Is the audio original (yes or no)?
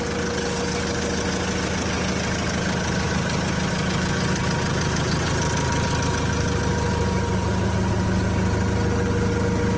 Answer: yes